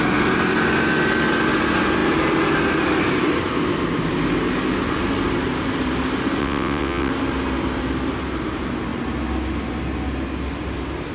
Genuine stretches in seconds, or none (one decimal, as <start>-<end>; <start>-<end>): 0.0-6.4; 7.1-11.1